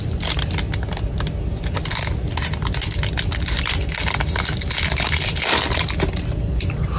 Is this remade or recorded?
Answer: recorded